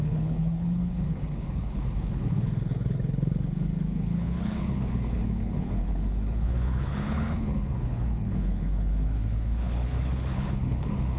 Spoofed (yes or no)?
yes